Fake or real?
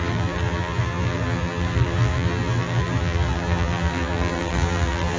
fake